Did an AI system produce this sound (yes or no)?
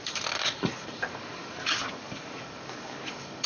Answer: yes